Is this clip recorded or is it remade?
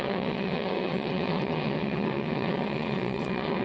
remade